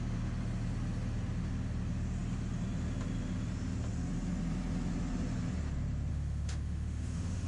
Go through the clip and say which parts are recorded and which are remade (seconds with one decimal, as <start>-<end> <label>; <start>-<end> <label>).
0.0-6.1 recorded; 6.1-7.5 remade